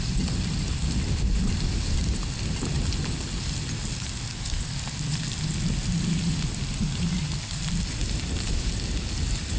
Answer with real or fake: real